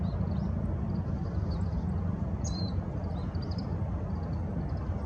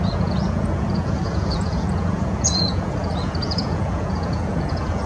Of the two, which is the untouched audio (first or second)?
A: first